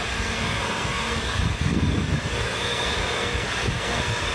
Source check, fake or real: fake